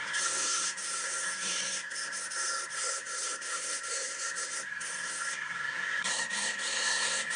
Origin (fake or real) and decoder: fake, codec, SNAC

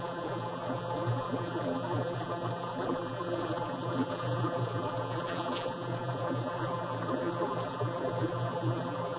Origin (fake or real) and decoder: fake, vocoder, BigVGAN v2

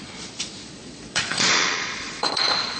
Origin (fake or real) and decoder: fake, vocoder, Vocos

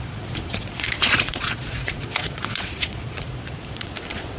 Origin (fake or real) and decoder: fake, vocoder, Vocos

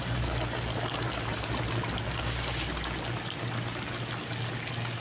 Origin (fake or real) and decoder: real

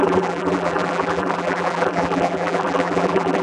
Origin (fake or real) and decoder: fake, vocoder, BigVGAN v2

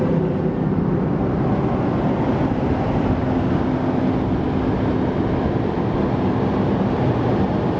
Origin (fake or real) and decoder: real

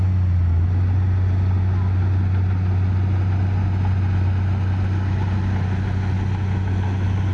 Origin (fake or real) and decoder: real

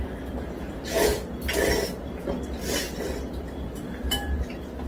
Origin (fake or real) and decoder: real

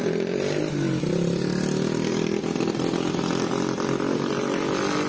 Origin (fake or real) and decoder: real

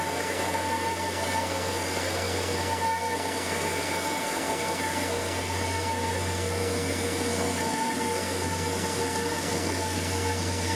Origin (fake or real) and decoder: fake, codec, SNAC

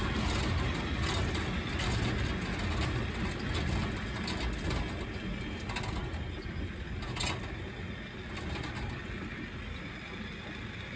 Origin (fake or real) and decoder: real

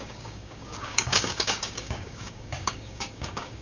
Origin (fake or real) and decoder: fake, codec, DAC